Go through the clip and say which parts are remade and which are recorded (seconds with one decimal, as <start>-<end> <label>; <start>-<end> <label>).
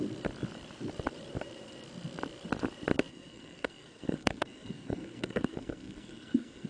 0.0-3.1 recorded; 3.1-6.7 remade